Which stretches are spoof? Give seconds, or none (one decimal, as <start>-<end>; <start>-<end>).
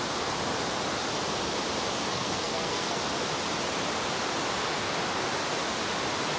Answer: 2.1-3.0